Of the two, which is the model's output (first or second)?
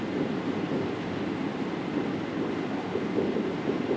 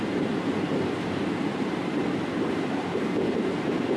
second